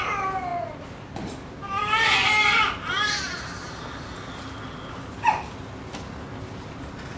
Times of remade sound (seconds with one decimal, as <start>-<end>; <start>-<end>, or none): none